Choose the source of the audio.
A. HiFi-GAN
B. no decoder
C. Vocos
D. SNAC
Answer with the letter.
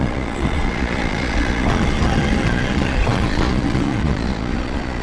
C